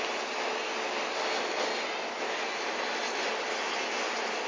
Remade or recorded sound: recorded